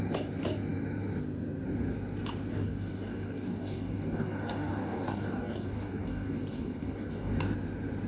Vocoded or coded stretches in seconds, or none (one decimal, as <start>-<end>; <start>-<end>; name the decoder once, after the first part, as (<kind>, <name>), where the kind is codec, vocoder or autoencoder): 2.5-7.4 (codec, DAC)